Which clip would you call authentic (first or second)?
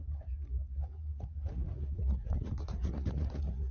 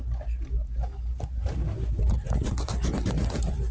second